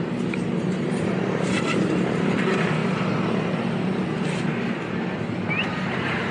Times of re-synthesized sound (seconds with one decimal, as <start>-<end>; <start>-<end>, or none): 0.0-2.8; 5.5-6.3